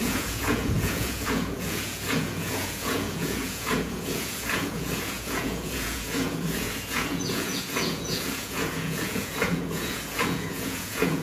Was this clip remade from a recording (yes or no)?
yes